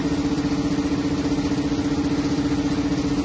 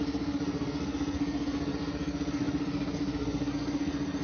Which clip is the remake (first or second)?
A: second